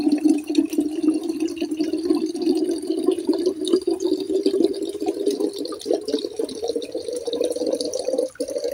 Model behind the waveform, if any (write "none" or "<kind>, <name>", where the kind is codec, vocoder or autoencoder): none